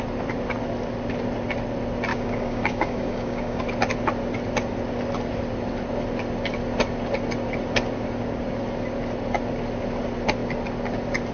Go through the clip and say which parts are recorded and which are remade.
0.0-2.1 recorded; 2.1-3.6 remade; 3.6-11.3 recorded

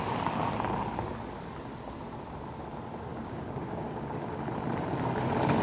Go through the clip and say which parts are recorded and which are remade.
0.0-3.1 recorded; 3.1-4.3 remade; 4.3-5.6 recorded